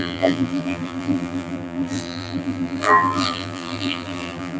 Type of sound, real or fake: fake